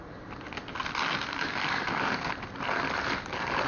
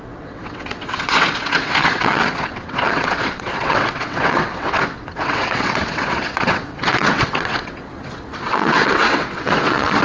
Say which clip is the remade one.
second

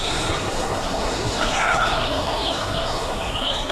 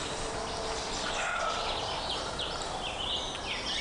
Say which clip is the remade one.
first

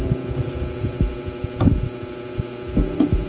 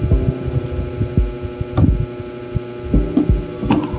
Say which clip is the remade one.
first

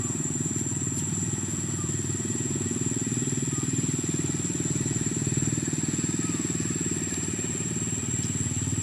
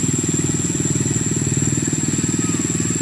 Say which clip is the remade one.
first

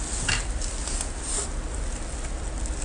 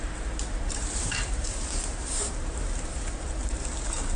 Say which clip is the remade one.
second